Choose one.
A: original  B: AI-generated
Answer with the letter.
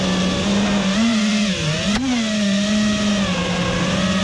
A